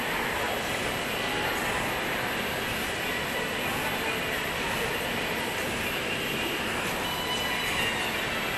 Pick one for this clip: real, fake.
real